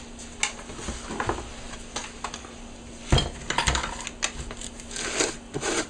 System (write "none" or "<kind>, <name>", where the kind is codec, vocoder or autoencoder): none